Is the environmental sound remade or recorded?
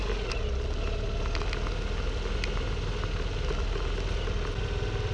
recorded